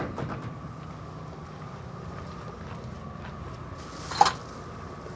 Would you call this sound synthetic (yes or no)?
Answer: no